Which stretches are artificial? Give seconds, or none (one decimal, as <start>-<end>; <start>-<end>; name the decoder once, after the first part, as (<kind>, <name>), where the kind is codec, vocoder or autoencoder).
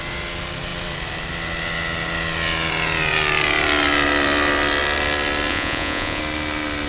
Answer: 5.5-6.2 (vocoder, Vocos)